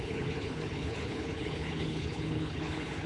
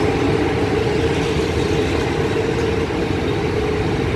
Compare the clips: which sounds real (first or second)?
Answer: second